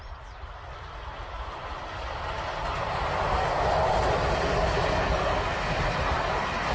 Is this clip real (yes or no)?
yes